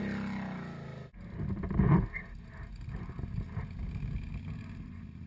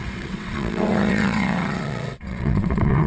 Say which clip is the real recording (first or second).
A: first